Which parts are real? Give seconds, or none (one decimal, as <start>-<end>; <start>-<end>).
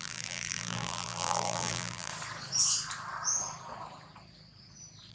2.1-5.1